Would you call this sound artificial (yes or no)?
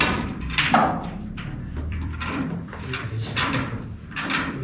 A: yes